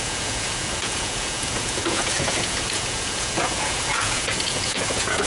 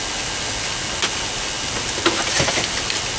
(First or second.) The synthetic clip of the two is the first